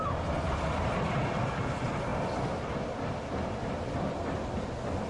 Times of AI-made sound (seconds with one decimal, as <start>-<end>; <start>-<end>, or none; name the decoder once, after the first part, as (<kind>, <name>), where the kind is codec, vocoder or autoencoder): none